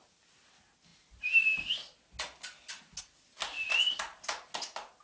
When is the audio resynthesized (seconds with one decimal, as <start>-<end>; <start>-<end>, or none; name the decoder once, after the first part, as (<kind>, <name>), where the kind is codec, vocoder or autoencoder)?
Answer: none